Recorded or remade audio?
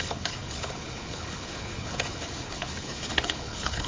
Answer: remade